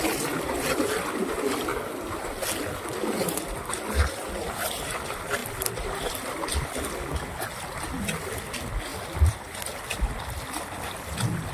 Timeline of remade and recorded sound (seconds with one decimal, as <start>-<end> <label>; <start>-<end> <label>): 0.0-11.5 recorded